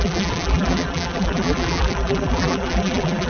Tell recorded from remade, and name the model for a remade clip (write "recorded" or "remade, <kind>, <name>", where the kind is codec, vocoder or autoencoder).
remade, vocoder, BigVGAN v2